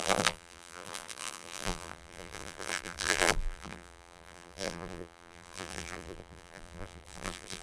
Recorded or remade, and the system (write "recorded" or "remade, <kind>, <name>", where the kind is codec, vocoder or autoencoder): remade, vocoder, BigVGAN v2